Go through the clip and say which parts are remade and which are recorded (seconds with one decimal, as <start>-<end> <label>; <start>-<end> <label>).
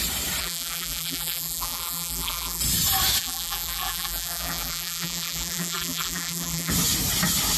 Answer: 0.0-0.4 recorded; 0.4-2.6 remade; 2.6-3.2 recorded; 3.2-6.7 remade; 6.7-7.6 recorded